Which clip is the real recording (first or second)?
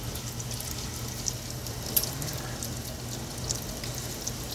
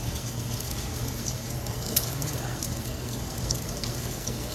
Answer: first